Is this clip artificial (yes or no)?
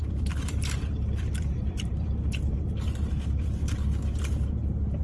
yes